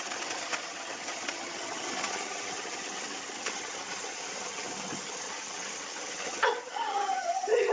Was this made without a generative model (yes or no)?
no